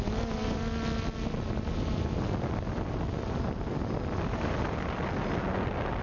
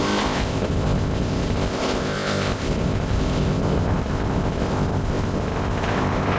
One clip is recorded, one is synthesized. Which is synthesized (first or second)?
second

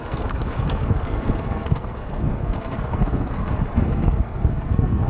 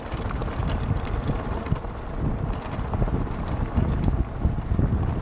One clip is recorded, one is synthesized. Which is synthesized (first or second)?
first